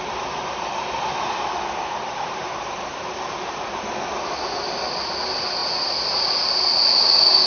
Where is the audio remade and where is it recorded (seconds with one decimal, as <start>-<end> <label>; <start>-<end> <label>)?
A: 0.0-7.5 recorded